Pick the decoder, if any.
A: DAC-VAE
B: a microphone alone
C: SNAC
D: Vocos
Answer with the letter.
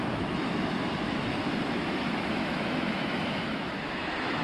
A